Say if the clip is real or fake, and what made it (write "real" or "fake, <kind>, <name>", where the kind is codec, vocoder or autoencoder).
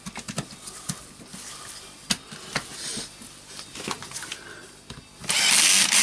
real